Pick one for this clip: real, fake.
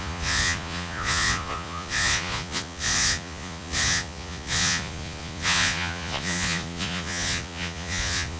fake